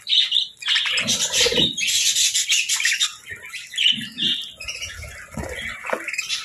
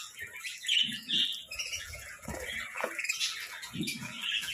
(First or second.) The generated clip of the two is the second